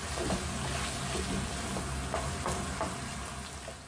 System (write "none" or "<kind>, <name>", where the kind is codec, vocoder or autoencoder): none